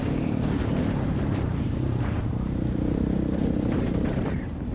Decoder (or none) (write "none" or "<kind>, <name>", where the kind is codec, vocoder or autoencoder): vocoder, BigVGAN v2